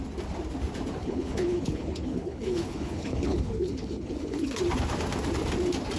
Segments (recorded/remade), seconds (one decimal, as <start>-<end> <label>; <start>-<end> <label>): 0.0-1.0 recorded; 1.0-4.6 remade; 4.6-6.0 recorded